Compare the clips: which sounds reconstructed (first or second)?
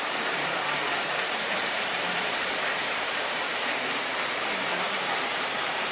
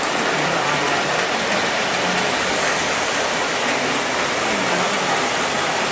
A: first